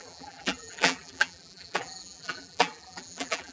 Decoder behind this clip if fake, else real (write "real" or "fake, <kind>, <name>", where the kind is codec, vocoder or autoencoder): fake, vocoder, BigVGAN v2